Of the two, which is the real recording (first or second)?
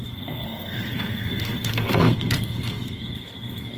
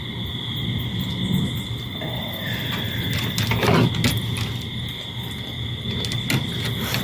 second